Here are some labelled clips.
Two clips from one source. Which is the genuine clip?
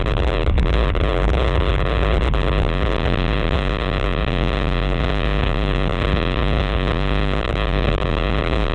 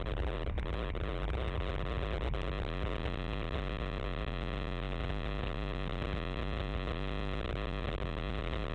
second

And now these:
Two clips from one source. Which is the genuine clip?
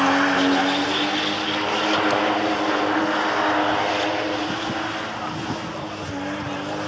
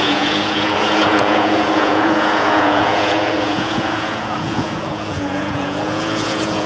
first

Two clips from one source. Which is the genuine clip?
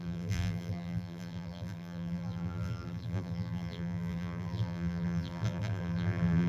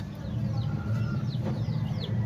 second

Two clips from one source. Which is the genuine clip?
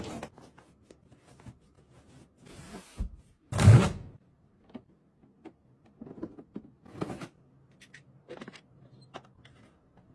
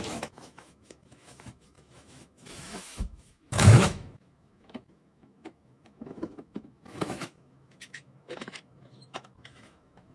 first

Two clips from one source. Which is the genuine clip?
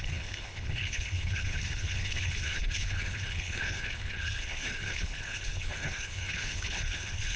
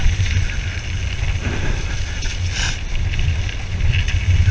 second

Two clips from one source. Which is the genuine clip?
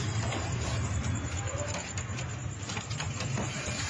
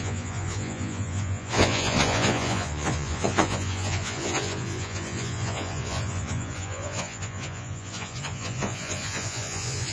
first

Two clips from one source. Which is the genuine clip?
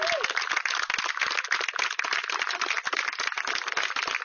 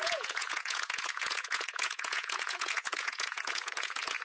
first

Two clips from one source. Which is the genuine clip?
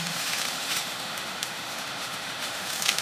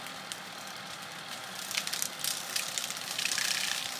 second